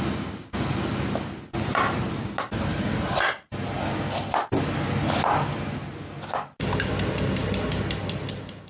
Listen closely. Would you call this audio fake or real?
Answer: real